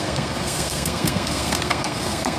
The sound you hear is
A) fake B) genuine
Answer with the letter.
A